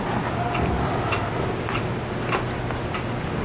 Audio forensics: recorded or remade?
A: recorded